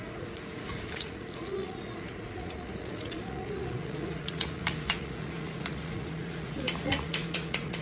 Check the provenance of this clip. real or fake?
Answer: fake